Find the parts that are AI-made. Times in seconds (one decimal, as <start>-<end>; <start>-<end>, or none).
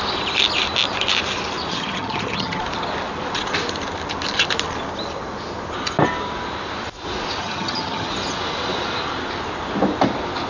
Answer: 1.7-2.6; 7.4-8.1